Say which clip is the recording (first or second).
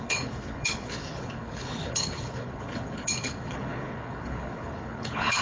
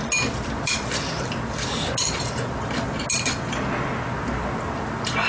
second